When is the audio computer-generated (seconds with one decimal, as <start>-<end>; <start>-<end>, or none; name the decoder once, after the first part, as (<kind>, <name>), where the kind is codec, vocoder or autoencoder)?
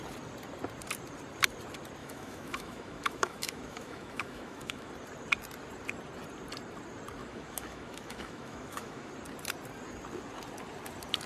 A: 2.0-4.9 (autoencoder, DAC-VAE); 7.2-9.1